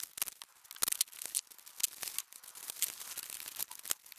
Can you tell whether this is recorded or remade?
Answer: recorded